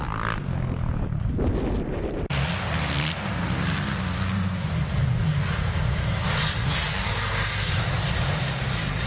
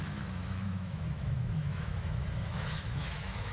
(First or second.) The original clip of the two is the first